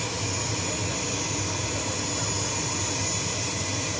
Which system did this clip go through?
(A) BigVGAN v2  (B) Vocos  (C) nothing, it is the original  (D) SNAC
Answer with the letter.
C